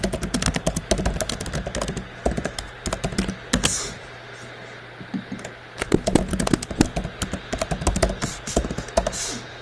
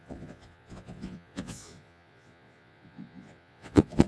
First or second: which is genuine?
first